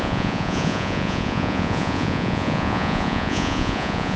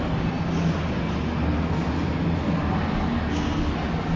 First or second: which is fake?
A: first